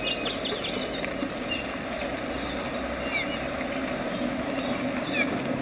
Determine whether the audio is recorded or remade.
recorded